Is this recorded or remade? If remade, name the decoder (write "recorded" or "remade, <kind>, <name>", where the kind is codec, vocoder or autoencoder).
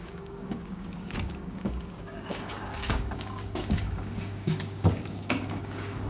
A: remade, codec, DAC